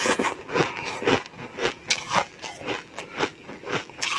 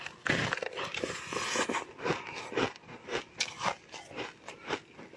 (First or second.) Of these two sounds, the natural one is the second